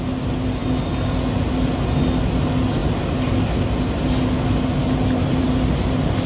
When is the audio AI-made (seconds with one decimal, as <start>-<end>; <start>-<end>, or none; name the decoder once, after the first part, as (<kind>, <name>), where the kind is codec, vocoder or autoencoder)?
none